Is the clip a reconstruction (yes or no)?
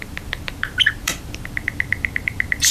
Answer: yes